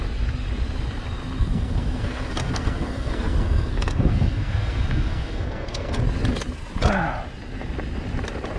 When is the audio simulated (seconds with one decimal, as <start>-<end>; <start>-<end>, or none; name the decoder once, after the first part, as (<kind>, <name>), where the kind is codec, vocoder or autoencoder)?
1.4-6.0 (codec, SNAC)